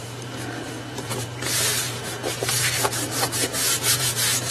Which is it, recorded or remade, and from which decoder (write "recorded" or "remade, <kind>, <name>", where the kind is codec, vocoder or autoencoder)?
remade, vocoder, BigVGAN v2